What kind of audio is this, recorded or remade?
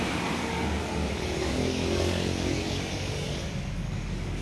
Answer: remade